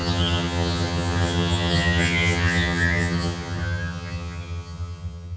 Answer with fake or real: fake